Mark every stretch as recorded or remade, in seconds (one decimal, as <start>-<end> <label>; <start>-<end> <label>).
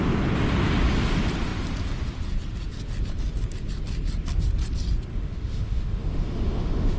0.0-5.1 recorded; 5.1-7.0 remade